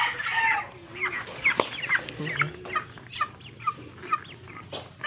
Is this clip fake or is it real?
real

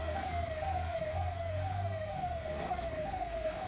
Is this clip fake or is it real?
fake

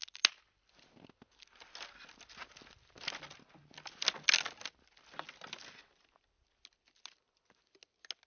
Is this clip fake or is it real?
real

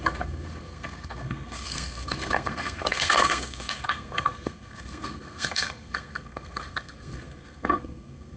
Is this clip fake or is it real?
fake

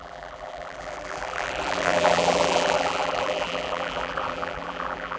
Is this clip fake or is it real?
fake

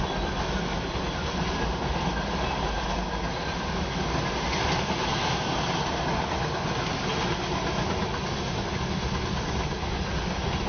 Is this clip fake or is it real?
real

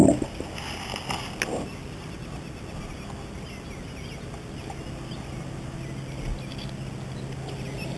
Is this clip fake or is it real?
real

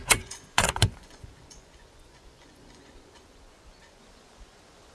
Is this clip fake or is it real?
fake